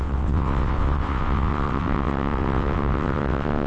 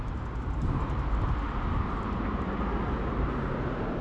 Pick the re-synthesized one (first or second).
first